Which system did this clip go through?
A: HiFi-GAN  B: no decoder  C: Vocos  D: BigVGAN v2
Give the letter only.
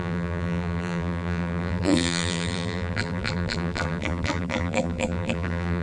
D